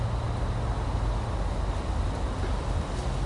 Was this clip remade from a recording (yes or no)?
no